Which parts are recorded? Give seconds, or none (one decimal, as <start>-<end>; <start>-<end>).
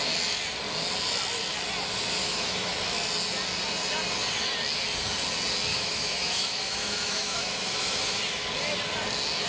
0.0-2.2; 2.7-5.7; 8.2-9.5